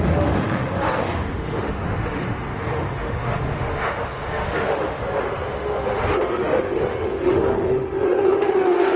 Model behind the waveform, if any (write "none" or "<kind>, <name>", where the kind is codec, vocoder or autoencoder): autoencoder, DAC-VAE